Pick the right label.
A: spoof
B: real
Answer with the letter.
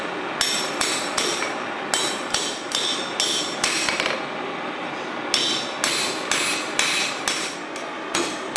B